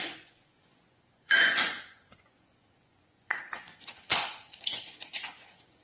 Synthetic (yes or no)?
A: yes